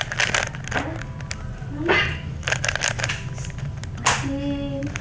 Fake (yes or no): no